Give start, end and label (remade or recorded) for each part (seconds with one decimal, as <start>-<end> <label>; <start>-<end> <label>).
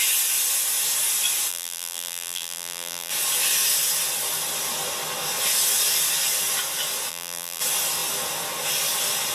0.0-1.5 recorded; 1.5-3.1 remade; 3.1-7.1 recorded; 7.1-7.6 remade; 7.6-9.3 recorded